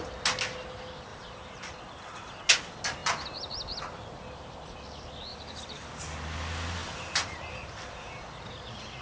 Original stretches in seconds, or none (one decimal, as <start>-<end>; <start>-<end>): 0.0-1.1; 2.4-5.3; 5.9-6.8; 8.1-9.0